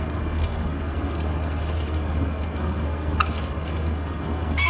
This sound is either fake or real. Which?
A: fake